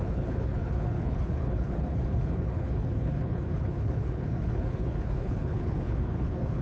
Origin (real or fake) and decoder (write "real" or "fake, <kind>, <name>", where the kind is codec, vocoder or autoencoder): fake, codec, HILCodec